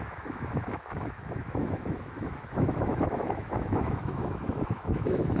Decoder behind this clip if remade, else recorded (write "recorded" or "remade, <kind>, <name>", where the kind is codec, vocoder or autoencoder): remade, autoencoder, DAC-VAE